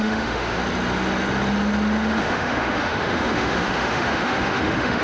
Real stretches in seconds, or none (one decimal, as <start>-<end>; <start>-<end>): 0.6-2.2